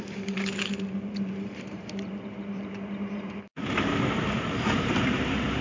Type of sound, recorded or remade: remade